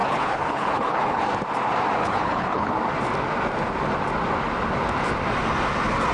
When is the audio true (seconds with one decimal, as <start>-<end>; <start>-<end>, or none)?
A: 1.2-2.0; 2.7-6.1